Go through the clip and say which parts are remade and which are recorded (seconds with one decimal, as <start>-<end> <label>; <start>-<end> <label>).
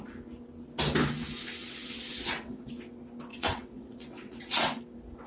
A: 0.0-1.6 recorded; 1.6-2.7 remade; 2.7-3.3 recorded; 3.3-4.8 remade; 4.8-5.3 recorded